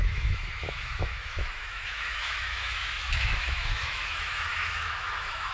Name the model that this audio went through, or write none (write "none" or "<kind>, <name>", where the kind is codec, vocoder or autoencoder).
autoencoder, DAC-VAE